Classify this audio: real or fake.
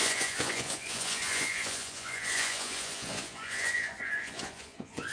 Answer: fake